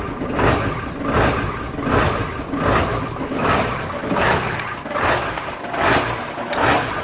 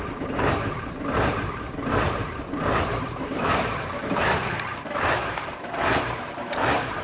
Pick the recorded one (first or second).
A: first